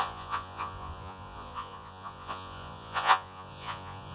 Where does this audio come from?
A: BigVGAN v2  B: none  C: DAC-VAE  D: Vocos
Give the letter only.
D